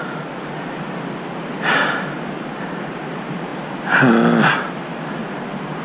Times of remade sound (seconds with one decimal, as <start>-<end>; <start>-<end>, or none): 1.8-3.1; 5.2-5.8